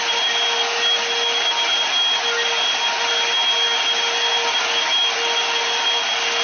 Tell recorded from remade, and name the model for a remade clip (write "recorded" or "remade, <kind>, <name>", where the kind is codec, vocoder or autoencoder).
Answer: recorded